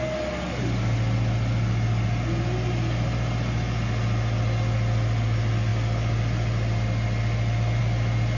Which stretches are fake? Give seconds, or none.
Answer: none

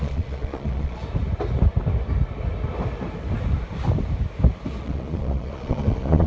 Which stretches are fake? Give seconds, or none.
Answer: 0.0-1.0 (vocoder, Vocos); 4.8-6.3

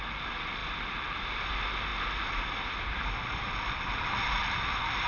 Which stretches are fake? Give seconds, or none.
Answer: 0.0-5.1 (vocoder, BigVGAN v2)

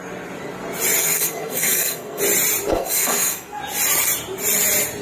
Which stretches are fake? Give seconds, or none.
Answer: 1.0-2.2 (codec, SNAC); 2.7-3.6

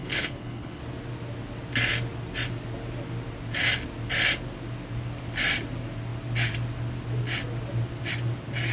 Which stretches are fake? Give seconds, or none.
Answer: 0.0-0.8 (codec, HILCodec)